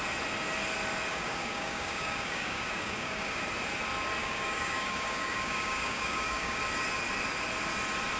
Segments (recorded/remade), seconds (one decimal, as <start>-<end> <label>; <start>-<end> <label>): 0.0-1.1 recorded; 1.1-3.4 remade; 3.4-4.2 recorded; 4.2-6.6 remade; 6.6-8.2 recorded